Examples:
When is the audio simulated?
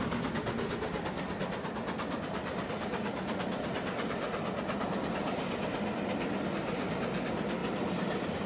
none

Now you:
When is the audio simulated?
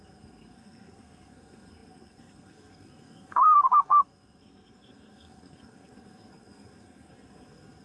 0.0-7.8 (codec, SNAC)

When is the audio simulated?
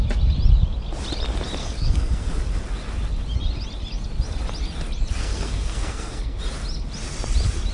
1.6-2.3 (codec, SNAC); 5.2-6.4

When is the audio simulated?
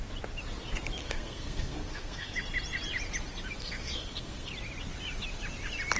1.0-2.3 (codec, SNAC); 3.6-4.5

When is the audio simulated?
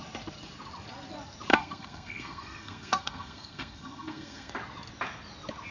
1.5-4.5 (codec, SNAC)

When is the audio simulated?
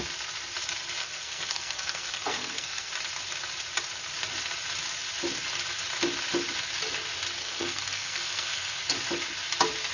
1.0-2.9 (codec, SNAC); 7.4-8.8